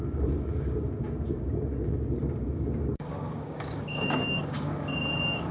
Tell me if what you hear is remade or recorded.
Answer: remade